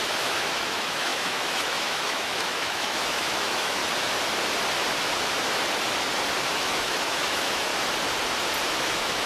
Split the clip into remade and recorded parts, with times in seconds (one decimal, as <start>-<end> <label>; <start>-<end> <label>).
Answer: 0.0-3.8 remade; 3.8-6.4 recorded; 6.4-7.7 remade; 7.7-8.7 recorded; 8.7-9.3 remade